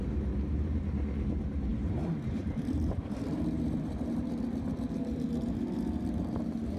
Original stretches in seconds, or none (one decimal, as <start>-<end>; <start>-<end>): none